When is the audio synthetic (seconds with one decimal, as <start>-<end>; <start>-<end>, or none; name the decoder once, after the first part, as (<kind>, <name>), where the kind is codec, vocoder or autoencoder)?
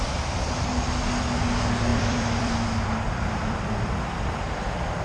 1.9-5.0 (vocoder, BigVGAN v2)